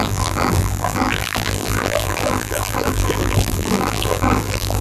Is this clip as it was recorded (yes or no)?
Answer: no